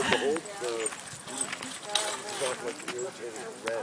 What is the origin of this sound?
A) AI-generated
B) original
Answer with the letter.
B